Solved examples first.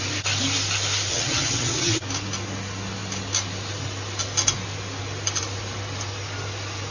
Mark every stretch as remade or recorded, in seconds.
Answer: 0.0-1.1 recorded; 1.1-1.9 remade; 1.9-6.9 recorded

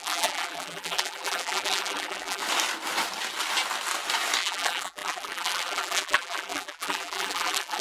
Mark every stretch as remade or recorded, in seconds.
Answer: 0.0-2.4 remade; 2.4-4.4 recorded; 4.4-7.8 remade

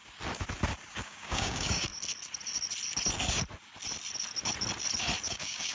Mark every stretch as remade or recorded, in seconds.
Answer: 0.0-0.9 recorded; 0.9-1.9 remade; 1.9-5.3 recorded; 5.3-5.7 remade